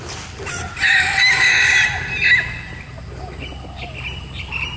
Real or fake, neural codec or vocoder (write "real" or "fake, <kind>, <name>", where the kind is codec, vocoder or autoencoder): real